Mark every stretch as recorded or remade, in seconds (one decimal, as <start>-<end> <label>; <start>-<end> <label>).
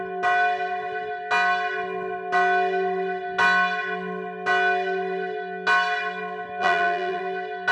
0.0-6.6 recorded; 6.6-7.2 remade; 7.2-7.7 recorded